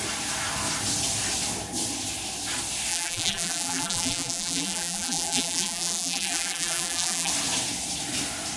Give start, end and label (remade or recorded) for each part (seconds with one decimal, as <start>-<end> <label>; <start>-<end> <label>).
0.0-2.9 recorded; 2.9-7.3 remade; 7.3-8.6 recorded